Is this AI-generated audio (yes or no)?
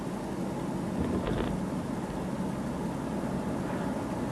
no